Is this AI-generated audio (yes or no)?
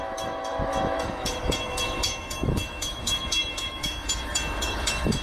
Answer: yes